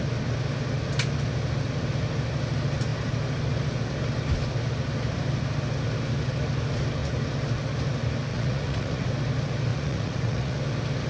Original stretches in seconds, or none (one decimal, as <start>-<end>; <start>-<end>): 0.0-8.3; 9.1-9.7; 10.6-11.1